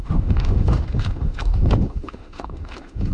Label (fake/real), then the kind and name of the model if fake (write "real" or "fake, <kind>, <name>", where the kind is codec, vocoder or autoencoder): fake, autoencoder, DAC-VAE